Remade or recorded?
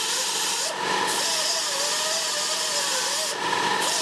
recorded